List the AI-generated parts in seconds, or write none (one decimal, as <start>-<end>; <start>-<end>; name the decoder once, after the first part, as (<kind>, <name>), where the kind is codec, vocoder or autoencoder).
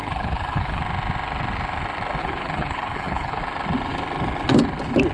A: 0.0-0.8 (codec, HILCodec); 2.2-3.4